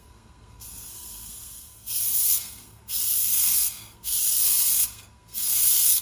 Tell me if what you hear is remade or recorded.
remade